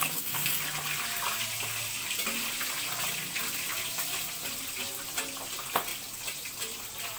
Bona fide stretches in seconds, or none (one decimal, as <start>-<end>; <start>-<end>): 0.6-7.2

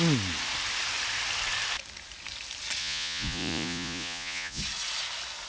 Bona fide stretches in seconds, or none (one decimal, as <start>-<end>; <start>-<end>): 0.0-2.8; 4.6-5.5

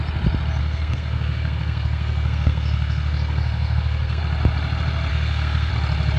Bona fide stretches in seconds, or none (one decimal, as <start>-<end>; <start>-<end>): 0.0-0.6; 4.2-5.1; 5.7-6.2